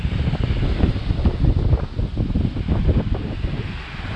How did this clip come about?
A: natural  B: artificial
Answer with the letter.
A